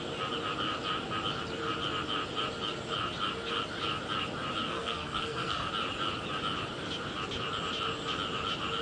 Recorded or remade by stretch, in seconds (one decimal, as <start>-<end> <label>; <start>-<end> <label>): 0.0-4.6 recorded; 4.6-5.7 remade; 5.7-8.8 recorded